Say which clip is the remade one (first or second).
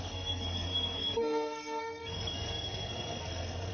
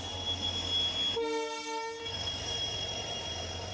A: first